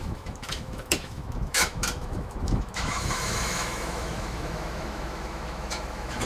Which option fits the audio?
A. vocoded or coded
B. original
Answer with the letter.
A